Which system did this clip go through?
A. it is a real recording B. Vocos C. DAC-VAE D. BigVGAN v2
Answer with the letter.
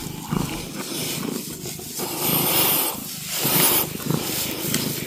A